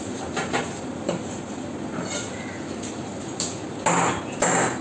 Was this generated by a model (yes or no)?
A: no